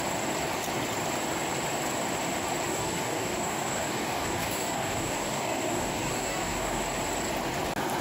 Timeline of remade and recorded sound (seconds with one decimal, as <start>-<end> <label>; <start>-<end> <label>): 0.0-2.7 recorded; 2.7-6.8 remade; 6.8-8.0 recorded